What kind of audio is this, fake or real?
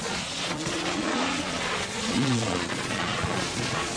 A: fake